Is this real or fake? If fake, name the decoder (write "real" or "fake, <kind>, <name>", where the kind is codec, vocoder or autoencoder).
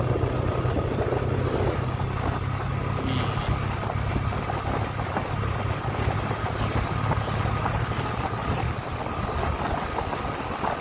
real